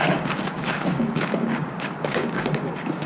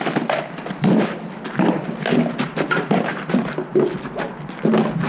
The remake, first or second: first